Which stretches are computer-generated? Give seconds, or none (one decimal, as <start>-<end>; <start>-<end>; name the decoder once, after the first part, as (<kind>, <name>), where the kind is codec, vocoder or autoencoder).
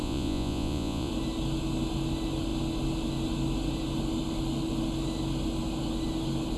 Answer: 0.0-1.1 (vocoder, Vocos)